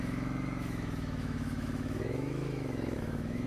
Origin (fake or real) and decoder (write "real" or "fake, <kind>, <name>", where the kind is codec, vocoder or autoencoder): fake, autoencoder, DAC-VAE